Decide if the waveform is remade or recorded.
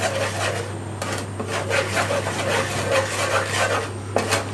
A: recorded